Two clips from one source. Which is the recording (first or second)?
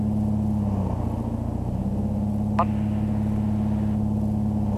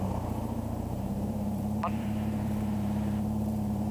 first